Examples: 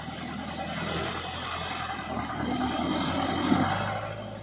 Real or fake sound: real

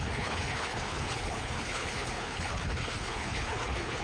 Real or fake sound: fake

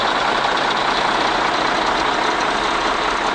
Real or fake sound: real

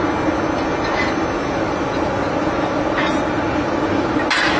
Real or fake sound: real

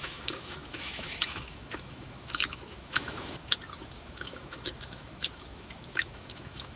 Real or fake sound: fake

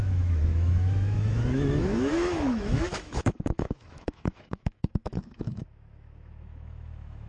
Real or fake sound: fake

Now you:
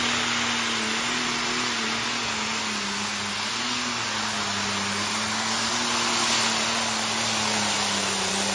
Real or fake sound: real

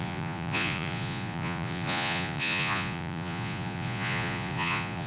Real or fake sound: fake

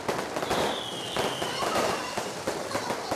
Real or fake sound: fake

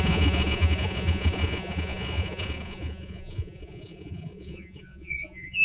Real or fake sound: fake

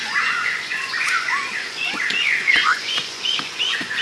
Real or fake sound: fake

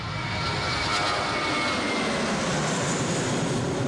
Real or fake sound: real